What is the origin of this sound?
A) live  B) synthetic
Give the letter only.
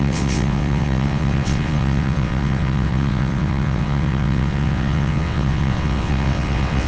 B